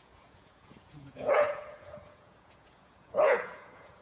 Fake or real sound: fake